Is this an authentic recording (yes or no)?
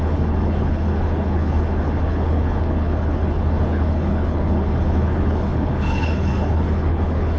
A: no